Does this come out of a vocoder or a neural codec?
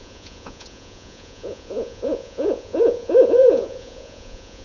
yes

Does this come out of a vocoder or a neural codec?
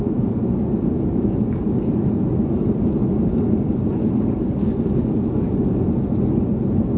no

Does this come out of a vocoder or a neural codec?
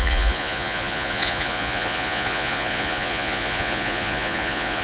yes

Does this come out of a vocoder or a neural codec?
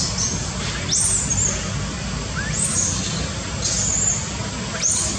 no